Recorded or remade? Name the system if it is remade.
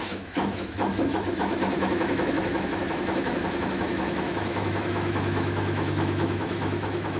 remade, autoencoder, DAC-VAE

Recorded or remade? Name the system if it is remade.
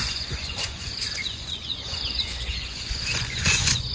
remade, vocoder, Vocos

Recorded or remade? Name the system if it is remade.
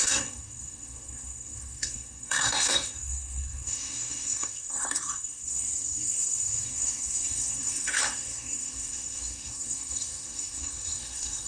remade, codec, SNAC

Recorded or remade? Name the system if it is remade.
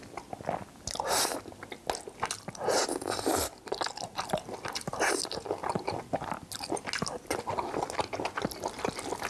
recorded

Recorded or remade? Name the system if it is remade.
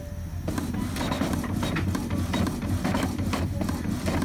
recorded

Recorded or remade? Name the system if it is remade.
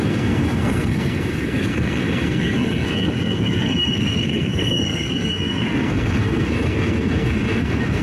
remade, codec, SNAC